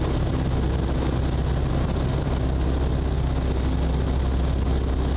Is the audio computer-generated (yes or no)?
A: no